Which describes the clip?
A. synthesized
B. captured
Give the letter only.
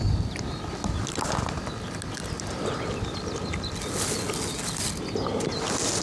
B